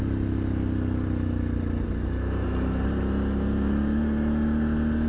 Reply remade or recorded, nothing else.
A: recorded